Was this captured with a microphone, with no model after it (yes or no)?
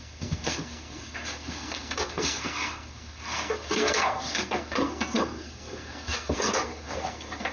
no